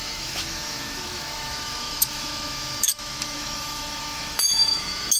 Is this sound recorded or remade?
remade